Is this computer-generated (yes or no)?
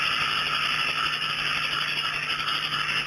no